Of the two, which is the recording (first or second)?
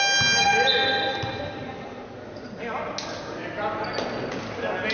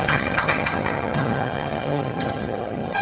first